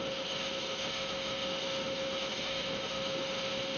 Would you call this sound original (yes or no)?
no